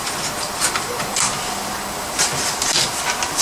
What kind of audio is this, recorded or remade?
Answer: recorded